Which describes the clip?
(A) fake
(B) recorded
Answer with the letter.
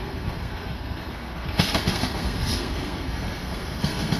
A